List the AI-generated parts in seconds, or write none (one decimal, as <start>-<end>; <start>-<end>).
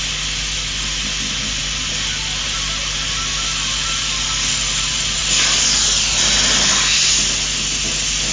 none